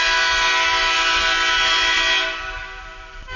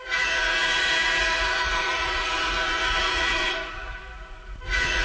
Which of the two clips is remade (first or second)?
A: second